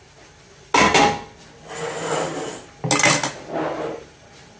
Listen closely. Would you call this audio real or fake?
real